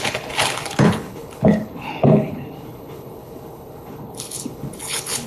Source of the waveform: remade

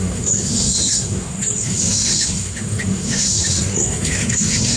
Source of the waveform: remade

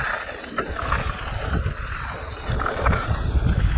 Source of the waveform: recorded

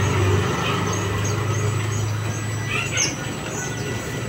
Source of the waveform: recorded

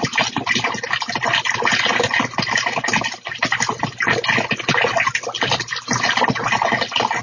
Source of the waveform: recorded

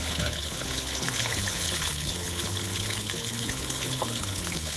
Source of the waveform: remade